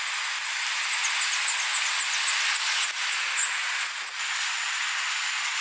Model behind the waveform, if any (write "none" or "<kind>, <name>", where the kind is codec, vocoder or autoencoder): none